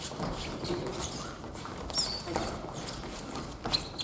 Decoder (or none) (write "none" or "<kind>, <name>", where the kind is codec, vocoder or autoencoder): none